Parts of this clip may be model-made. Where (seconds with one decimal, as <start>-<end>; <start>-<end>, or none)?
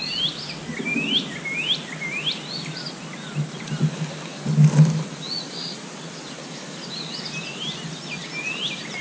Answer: none